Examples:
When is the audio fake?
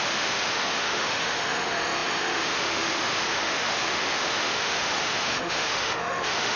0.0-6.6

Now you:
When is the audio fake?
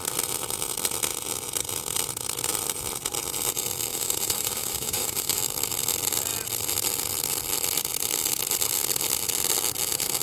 3.9-5.4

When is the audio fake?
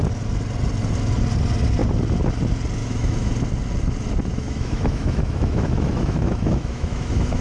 2.8-3.3; 4.3-7.4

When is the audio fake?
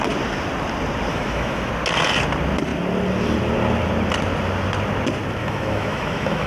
1.1-1.7; 5.4-6.5